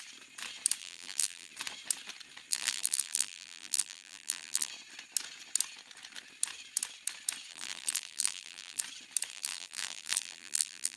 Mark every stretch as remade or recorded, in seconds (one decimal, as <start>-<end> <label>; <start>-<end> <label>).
0.0-0.8 recorded; 0.8-1.5 remade; 1.5-2.5 recorded; 2.5-4.7 remade; 4.7-7.5 recorded; 7.5-8.8 remade; 8.8-9.3 recorded; 9.3-11.0 remade